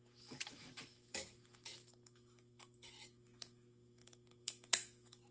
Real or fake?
fake